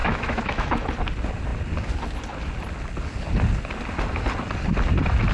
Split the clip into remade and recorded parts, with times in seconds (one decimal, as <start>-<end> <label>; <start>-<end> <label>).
0.0-0.9 remade; 0.9-5.3 recorded